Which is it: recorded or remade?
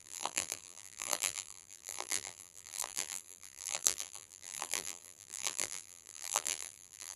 remade